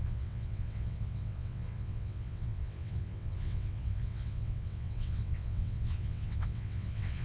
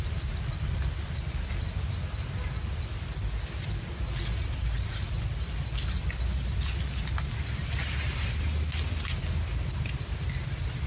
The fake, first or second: first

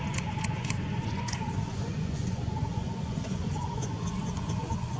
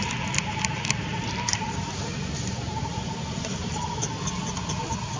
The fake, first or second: first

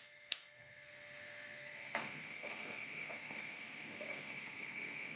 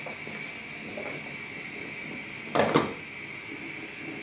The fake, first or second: first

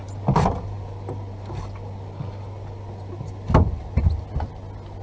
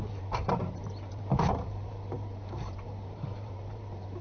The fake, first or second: second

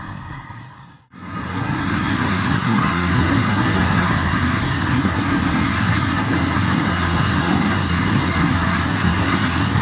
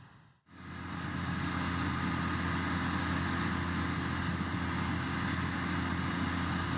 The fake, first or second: first